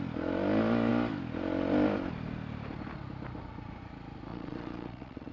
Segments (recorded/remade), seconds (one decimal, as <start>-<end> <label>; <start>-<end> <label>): 0.0-4.3 recorded; 4.3-5.3 remade